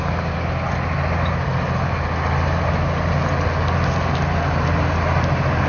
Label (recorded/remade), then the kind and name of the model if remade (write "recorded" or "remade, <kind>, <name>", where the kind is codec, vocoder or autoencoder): recorded